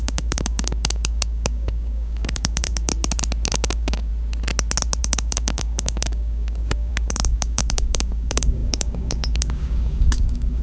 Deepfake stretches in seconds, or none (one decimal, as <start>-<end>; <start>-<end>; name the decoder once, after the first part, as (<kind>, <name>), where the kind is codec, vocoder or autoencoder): 0.0-2.9 (codec, DAC); 3.5-4.1; 5.0-10.6